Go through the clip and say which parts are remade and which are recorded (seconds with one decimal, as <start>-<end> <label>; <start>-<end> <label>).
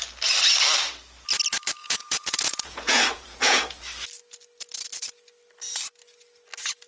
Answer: 0.0-1.8 recorded; 1.8-3.8 remade; 3.8-6.9 recorded